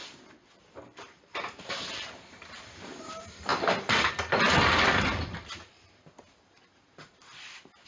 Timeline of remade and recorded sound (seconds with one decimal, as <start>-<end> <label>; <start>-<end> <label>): 0.0-2.6 remade; 2.6-3.5 recorded; 3.5-4.1 remade; 4.1-7.9 recorded

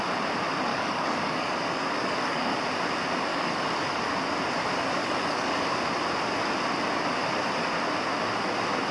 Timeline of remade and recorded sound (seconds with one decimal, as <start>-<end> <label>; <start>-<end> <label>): 0.0-0.7 recorded; 0.7-2.6 remade; 2.6-3.3 recorded; 3.3-4.0 remade; 4.0-5.0 recorded; 5.0-5.7 remade; 5.7-8.9 recorded

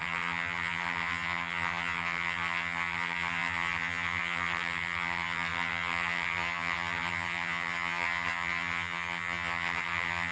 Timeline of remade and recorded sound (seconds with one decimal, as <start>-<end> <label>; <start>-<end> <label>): 0.0-10.3 remade

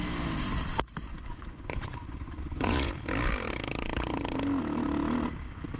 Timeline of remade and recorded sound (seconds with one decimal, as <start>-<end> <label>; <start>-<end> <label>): 0.0-1.1 recorded; 1.1-2.9 remade; 2.9-5.8 recorded